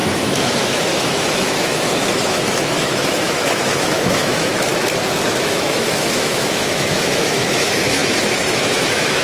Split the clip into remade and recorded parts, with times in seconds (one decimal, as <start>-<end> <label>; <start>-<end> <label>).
0.0-4.7 remade; 4.7-5.3 recorded; 5.3-9.2 remade